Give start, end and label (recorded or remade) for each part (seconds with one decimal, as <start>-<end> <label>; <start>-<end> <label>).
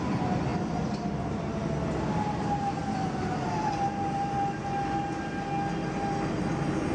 0.0-6.9 recorded